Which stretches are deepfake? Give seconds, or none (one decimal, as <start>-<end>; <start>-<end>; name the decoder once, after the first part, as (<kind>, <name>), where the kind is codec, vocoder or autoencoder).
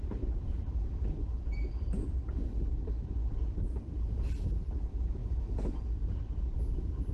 0.0-2.2 (vocoder, BigVGAN v2); 3.4-7.1